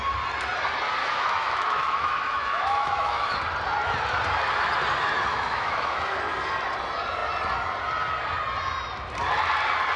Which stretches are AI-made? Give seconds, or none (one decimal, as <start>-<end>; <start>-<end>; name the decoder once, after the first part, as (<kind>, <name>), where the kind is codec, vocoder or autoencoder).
1.0-3.4 (autoencoder, DAC-VAE); 5.3-6.2